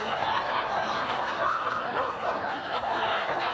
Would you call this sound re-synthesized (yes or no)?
yes